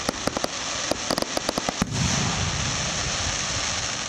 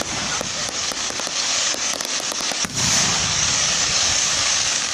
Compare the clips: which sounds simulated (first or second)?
second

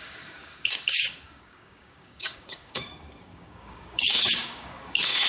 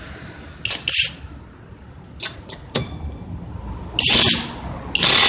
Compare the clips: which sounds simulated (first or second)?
first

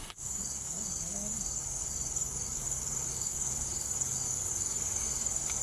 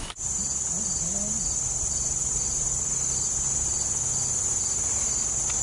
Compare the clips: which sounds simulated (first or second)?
first